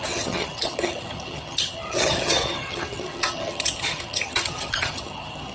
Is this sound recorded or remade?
remade